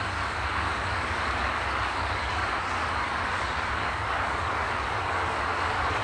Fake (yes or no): yes